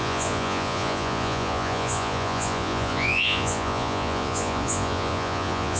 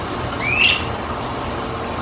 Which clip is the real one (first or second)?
second